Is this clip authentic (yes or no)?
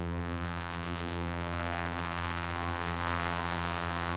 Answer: no